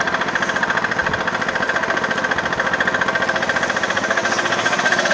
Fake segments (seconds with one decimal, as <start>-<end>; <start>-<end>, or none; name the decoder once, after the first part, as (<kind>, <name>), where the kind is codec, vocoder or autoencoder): none